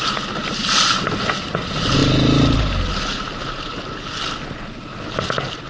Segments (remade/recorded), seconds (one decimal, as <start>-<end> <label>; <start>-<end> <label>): 0.0-5.7 recorded